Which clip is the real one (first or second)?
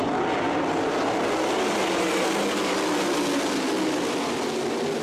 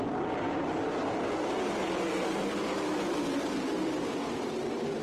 first